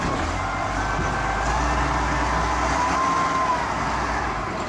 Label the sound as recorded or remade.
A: recorded